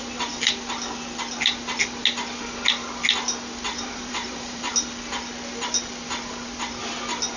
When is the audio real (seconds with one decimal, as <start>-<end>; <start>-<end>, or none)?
0.0-3.7; 4.7-7.4

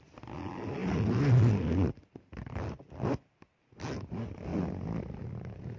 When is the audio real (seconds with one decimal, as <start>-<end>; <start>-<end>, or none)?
0.0-5.8

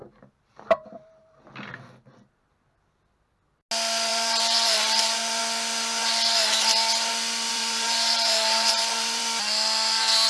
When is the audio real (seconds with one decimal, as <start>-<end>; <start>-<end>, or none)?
1.4-4.1; 5.4-7.5; 9.2-10.3

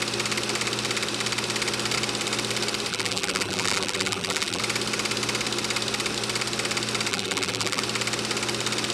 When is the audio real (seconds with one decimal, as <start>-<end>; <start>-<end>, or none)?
0.0-2.9; 4.6-7.1; 7.8-8.9

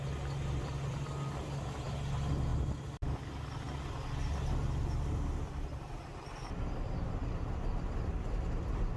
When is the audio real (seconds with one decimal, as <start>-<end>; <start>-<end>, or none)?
0.0-9.0

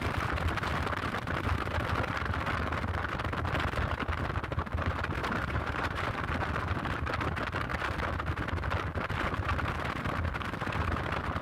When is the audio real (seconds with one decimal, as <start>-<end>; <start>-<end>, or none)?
0.0-5.2; 6.1-11.4